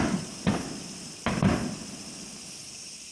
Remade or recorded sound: recorded